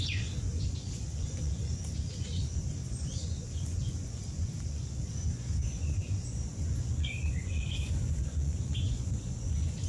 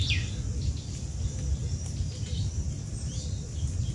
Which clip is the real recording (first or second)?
second